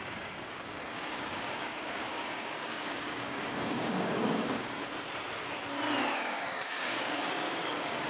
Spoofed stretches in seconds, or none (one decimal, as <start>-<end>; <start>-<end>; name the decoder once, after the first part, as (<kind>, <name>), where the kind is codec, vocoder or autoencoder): 0.0-4.8 (codec, DAC); 6.1-8.1